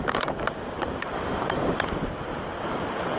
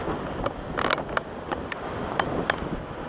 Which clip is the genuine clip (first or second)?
second